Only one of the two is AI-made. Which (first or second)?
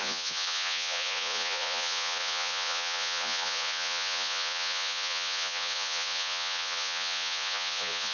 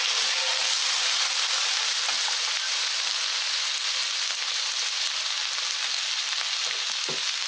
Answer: first